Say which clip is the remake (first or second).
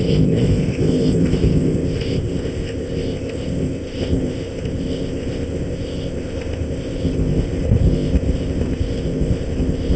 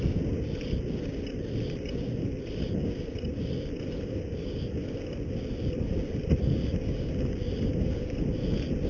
first